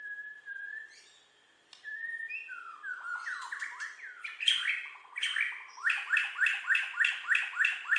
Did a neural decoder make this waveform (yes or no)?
no